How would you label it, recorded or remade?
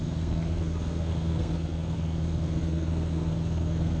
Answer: remade